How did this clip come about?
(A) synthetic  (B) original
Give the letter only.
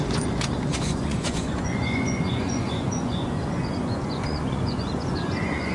A